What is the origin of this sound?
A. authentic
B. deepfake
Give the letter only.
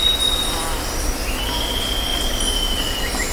A